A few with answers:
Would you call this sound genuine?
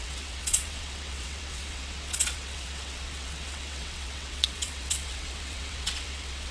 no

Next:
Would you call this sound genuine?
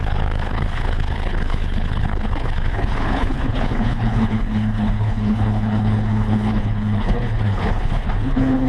no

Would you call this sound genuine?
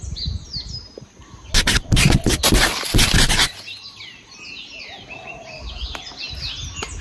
yes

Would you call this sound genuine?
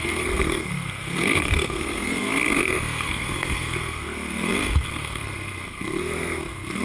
no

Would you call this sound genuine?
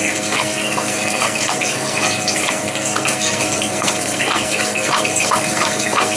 no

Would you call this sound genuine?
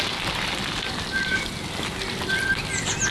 yes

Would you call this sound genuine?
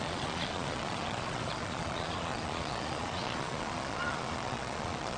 no